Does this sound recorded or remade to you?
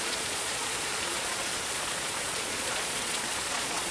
remade